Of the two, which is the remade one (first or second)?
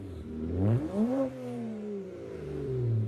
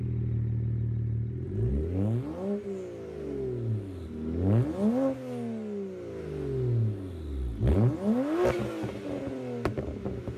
first